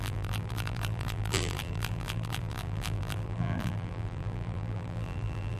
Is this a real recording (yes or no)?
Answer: no